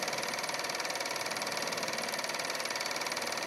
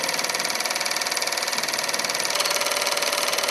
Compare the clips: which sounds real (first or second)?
second